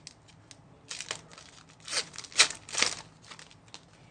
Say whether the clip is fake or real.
real